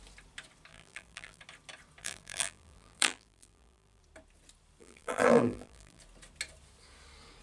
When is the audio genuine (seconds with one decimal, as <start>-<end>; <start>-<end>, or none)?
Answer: 0.0-0.7; 1.4-2.0; 4.0-4.8; 6.0-7.4